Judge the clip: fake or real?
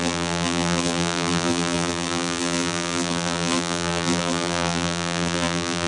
fake